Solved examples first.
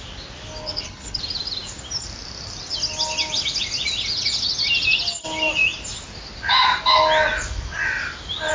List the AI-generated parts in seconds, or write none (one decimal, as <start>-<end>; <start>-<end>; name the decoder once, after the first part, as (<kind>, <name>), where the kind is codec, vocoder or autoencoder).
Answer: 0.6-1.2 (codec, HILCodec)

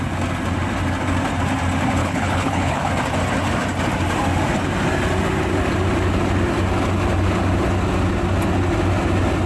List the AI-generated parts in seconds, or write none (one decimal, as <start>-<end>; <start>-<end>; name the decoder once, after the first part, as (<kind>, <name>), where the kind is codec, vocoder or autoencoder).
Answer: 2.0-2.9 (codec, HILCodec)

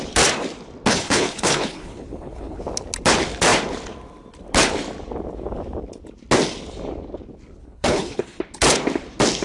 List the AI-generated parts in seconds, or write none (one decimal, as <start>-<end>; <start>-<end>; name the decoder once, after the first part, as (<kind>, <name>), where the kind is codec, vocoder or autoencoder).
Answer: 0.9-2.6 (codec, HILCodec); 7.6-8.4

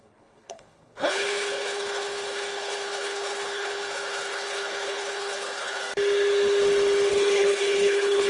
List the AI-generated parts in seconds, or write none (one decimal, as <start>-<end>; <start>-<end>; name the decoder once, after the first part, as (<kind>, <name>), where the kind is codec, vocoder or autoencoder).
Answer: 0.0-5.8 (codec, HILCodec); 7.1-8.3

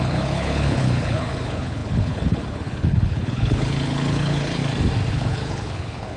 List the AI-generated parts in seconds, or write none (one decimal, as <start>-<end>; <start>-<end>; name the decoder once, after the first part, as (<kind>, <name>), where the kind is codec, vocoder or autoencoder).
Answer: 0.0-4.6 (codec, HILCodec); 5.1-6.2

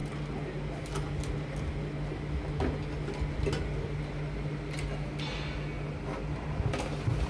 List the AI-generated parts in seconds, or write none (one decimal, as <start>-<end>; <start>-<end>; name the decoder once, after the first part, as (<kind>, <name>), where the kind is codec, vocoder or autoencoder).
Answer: none